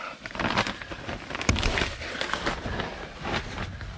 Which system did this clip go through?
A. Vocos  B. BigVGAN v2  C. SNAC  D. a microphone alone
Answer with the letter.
D